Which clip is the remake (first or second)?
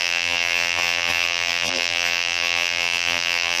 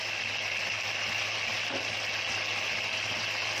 first